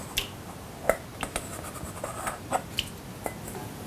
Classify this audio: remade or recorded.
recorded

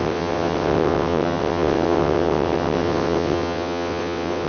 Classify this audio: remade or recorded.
remade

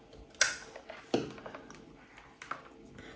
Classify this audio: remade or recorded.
recorded